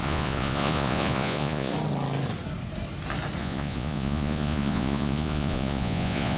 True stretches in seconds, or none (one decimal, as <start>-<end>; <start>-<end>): 1.7-3.4